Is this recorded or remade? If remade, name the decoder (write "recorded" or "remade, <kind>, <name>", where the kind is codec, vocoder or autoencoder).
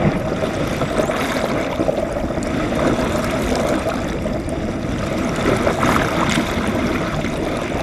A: remade, vocoder, BigVGAN v2